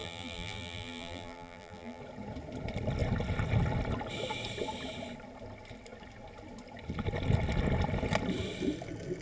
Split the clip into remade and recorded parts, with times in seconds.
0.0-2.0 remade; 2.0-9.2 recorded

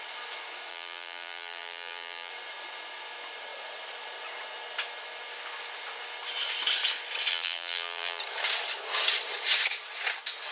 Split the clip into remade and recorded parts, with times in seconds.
0.0-0.7 recorded; 0.7-2.3 remade; 2.3-7.3 recorded; 7.3-8.2 remade; 8.2-10.5 recorded

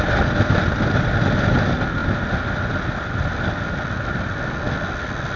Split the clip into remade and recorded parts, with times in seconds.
0.0-5.4 recorded